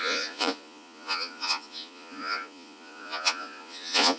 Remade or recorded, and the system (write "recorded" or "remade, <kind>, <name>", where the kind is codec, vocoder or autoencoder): remade, vocoder, Vocos